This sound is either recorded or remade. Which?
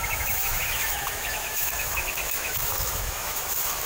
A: remade